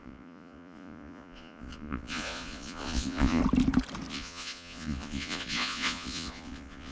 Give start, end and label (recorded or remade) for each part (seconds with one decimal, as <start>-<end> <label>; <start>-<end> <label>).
0.0-3.4 remade; 3.4-4.1 recorded; 4.1-6.9 remade